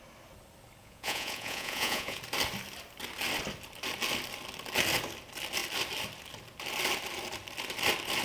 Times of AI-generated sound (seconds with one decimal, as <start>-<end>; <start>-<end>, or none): 0.8-2.2